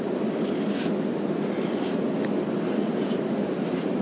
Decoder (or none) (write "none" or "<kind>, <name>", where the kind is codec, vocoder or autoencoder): none